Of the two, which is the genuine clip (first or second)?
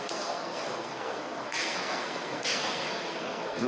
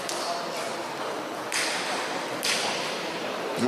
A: second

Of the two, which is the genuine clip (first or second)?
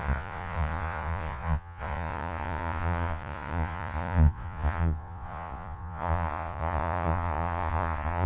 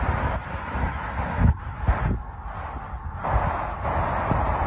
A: second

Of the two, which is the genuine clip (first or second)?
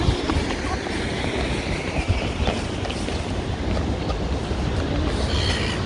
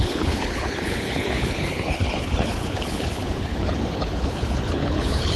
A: first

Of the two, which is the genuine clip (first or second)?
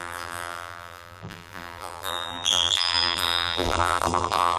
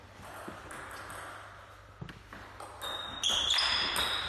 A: second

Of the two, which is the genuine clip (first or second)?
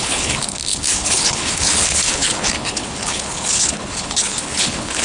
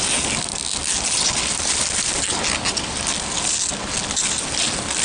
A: second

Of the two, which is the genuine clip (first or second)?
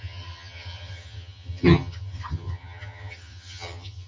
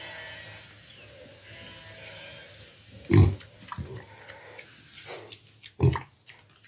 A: second